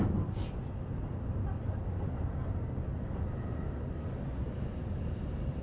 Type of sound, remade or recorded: remade